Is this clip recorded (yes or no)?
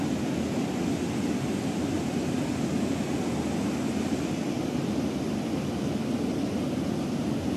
yes